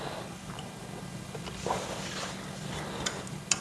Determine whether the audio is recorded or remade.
recorded